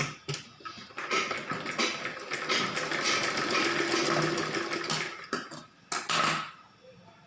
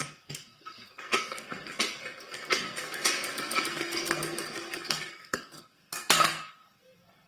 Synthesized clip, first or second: second